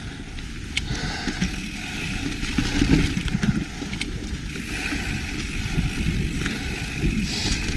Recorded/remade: recorded